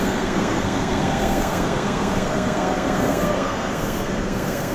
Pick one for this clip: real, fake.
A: fake